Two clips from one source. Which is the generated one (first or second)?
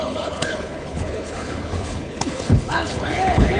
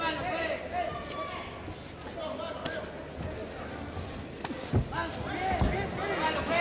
first